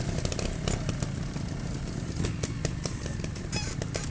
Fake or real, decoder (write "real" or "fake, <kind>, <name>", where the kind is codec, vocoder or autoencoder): real